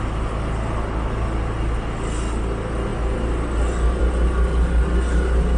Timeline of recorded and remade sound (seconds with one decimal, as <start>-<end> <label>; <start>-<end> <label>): 0.0-5.6 recorded